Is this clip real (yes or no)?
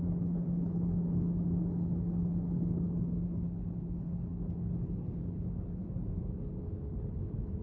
no